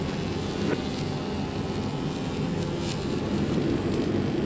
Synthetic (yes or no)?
no